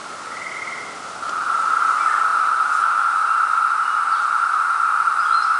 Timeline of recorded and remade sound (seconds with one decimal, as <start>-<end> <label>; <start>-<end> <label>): 0.0-5.6 recorded